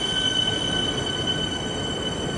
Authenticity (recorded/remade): recorded